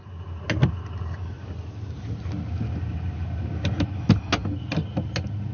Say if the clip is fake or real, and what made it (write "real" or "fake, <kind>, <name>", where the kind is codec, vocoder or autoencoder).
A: real